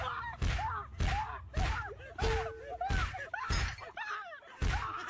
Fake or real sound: real